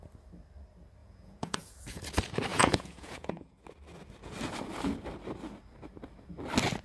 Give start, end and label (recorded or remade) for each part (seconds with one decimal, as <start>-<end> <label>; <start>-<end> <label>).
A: 0.0-1.0 recorded; 1.0-2.0 remade; 2.0-2.5 recorded; 2.5-3.6 remade; 3.6-6.8 recorded